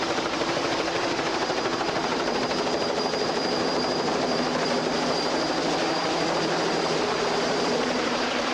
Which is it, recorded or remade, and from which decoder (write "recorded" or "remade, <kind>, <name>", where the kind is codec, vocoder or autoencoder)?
remade, vocoder, BigVGAN v2